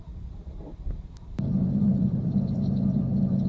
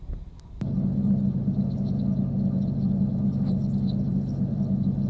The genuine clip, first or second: second